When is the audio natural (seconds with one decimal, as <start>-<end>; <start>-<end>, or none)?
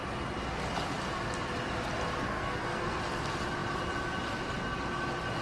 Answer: 0.0-2.3; 3.0-5.4